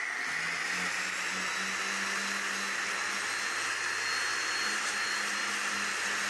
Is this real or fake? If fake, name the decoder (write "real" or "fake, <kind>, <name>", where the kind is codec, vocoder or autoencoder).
real